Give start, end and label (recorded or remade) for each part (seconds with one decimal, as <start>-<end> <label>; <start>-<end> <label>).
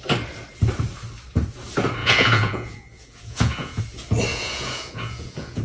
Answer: 0.0-2.0 recorded; 2.0-3.8 remade; 3.8-4.3 recorded; 4.3-5.6 remade